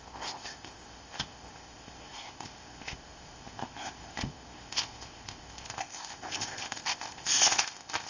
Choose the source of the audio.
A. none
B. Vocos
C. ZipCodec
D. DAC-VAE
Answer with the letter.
C